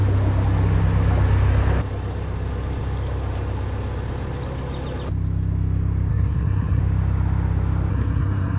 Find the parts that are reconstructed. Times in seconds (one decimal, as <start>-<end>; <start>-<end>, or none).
6.1-6.8; 7.9-8.6